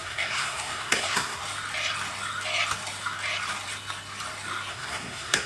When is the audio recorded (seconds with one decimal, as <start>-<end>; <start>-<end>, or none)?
1.4-4.7